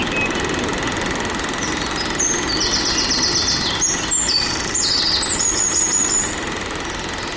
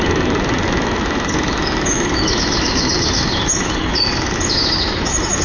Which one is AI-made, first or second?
second